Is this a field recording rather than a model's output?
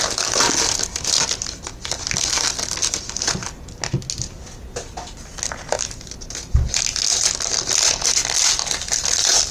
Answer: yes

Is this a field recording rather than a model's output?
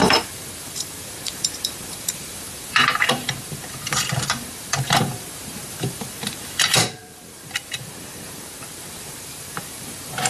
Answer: no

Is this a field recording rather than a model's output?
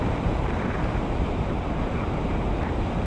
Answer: no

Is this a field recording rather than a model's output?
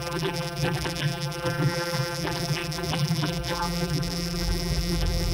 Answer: no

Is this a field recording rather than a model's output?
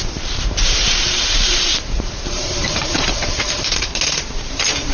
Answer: no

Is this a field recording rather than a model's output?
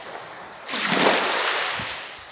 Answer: yes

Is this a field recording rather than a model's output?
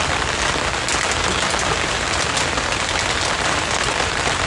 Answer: yes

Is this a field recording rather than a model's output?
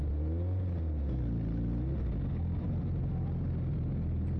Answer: yes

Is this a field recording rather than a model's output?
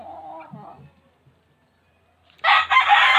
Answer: yes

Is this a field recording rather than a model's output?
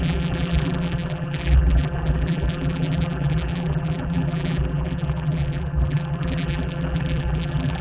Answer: no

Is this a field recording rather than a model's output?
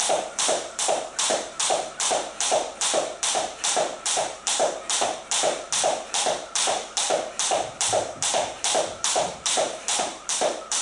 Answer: no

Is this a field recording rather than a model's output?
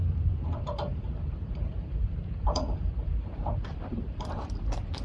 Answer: no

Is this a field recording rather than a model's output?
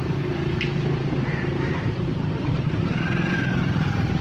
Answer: no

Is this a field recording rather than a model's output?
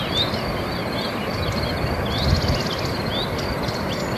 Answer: yes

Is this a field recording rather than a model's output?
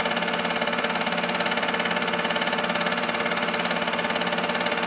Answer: yes